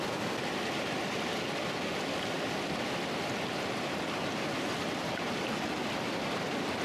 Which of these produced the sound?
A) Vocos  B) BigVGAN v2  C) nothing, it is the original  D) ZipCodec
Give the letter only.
C